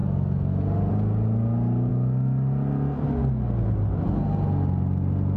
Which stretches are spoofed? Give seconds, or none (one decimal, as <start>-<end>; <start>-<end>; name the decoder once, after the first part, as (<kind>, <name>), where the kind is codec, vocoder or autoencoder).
none

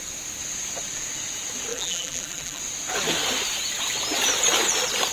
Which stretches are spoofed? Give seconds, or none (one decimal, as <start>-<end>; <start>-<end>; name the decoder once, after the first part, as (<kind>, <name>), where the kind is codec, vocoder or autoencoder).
1.7-2.6 (vocoder, BigVGAN v2)